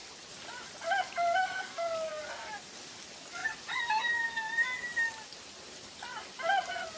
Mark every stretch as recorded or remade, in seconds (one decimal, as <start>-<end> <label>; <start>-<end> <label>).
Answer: 0.0-1.4 recorded; 1.4-2.1 remade; 2.1-7.0 recorded